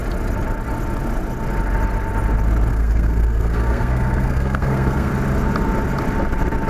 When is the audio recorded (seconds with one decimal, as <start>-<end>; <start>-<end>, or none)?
0.0-2.7; 5.1-6.7